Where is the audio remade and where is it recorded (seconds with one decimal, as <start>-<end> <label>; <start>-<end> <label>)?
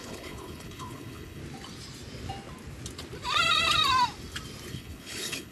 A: 0.0-1.4 remade; 1.4-4.7 recorded; 4.7-5.5 remade